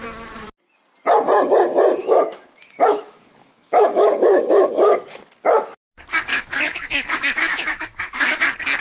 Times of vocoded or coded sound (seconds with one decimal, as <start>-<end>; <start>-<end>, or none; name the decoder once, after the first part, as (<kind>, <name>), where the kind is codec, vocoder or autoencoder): 2.0-5.3 (autoencoder, DAC-VAE); 6.3-8.4